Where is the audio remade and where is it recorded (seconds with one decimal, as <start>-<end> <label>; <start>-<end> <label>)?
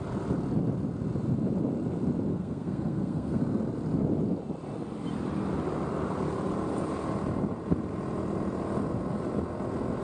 0.0-2.3 recorded; 2.3-3.4 remade; 3.4-10.0 recorded